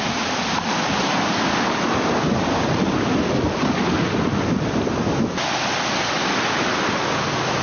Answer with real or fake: real